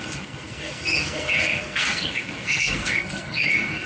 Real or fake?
fake